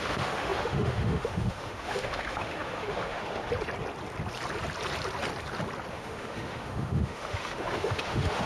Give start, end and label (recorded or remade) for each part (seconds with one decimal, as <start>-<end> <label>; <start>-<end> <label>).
0.0-3.5 remade; 3.5-5.9 recorded; 5.9-8.5 remade